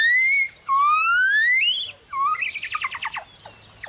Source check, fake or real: real